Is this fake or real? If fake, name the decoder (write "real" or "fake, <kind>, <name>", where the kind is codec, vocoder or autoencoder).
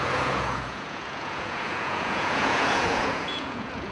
fake, vocoder, Vocos